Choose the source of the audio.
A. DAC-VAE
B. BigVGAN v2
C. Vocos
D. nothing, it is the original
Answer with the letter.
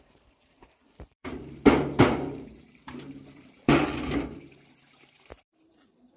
B